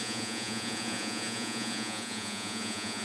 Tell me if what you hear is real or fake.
fake